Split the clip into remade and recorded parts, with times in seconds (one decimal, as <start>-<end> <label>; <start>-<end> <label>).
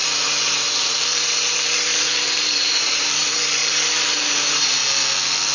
0.0-4.8 remade; 4.8-5.5 recorded